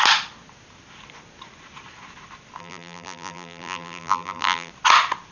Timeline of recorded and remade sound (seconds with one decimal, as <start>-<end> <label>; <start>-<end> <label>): 0.0-2.6 recorded; 2.6-4.7 remade; 4.7-5.3 recorded